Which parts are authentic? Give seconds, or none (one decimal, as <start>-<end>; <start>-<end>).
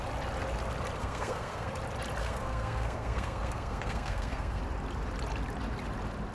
0.0-1.0; 1.7-2.2; 4.6-6.3